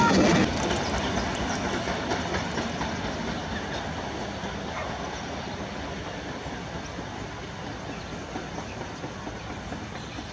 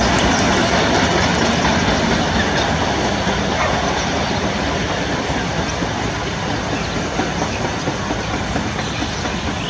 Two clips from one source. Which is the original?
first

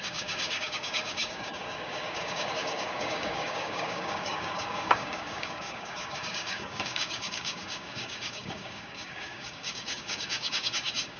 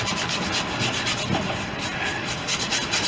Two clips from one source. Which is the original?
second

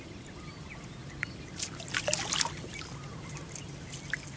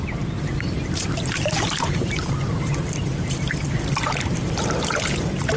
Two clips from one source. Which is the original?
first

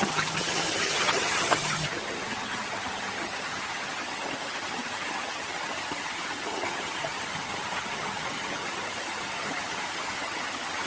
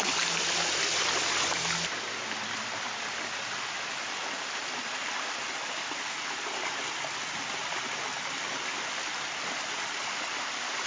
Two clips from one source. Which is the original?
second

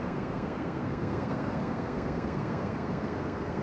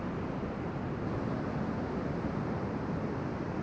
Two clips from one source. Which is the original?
second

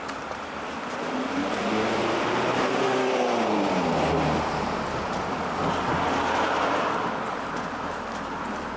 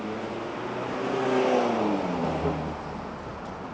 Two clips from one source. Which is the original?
second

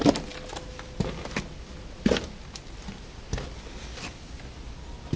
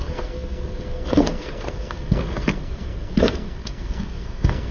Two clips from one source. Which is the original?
first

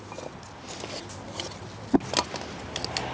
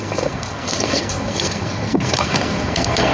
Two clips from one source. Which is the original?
first